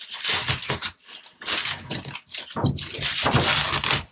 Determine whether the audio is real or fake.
real